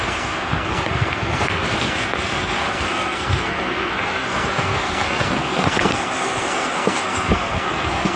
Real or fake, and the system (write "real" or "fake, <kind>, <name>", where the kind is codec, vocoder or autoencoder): fake, codec, SNAC